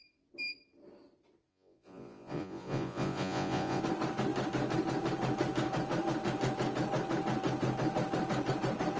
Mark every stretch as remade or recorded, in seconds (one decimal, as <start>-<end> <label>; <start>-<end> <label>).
0.0-1.5 recorded; 1.5-3.8 remade; 3.8-9.0 recorded